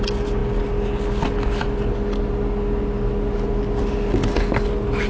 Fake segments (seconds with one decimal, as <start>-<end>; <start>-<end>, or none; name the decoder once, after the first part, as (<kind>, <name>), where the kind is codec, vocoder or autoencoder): none